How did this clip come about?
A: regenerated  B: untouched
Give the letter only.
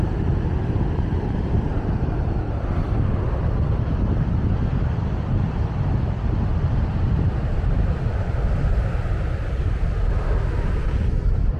B